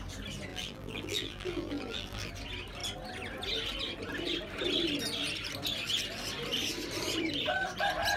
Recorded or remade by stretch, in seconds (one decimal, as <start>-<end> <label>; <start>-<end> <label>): 0.0-0.5 recorded; 0.5-2.3 remade; 2.3-8.2 recorded